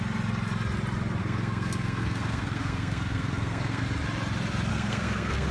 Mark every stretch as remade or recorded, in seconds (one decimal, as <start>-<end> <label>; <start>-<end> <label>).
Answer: 0.0-1.2 recorded; 1.2-3.8 remade; 3.8-4.7 recorded; 4.7-5.5 remade